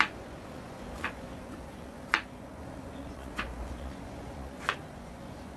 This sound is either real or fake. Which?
fake